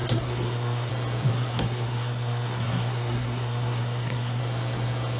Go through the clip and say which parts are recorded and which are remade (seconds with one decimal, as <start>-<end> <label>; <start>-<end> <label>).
0.0-0.9 remade; 0.9-1.3 recorded; 1.3-4.4 remade; 4.4-5.2 recorded